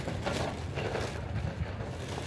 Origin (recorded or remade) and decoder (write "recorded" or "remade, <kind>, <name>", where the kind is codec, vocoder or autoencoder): recorded